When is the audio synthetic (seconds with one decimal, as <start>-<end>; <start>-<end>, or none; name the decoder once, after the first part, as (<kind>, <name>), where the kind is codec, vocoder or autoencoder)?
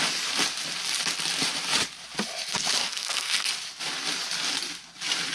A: 2.8-3.5 (codec, SNAC)